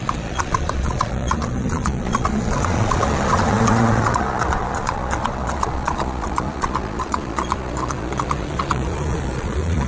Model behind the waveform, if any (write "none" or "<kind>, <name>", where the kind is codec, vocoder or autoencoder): vocoder, Vocos